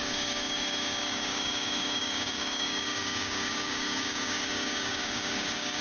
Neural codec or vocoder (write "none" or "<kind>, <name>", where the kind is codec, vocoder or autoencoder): codec, DAC